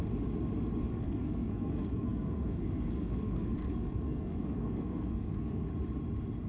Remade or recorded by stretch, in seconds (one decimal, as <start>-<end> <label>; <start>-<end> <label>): 0.0-0.9 recorded; 0.9-5.7 remade; 5.7-6.5 recorded